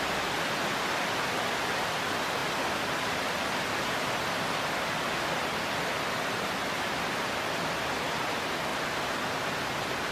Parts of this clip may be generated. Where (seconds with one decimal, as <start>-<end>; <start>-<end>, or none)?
none